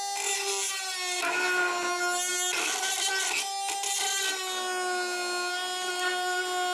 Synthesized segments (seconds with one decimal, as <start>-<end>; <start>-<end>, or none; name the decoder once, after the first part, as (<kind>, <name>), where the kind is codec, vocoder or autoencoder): none